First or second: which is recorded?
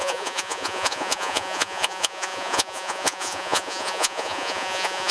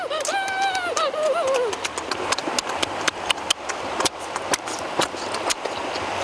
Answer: second